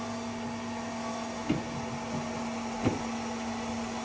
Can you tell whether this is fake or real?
real